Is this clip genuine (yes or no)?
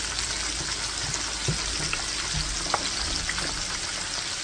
yes